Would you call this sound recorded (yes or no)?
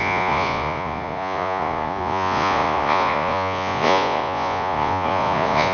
no